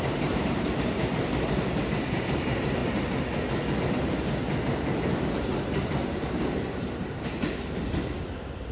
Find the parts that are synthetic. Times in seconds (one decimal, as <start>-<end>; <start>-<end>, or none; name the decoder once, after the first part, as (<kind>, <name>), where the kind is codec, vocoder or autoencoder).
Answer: 0.0-2.8 (vocoder, BigVGAN v2); 3.8-8.7